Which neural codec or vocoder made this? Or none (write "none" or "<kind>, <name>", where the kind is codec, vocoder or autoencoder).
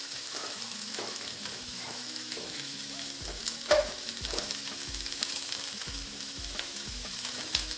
autoencoder, DAC-VAE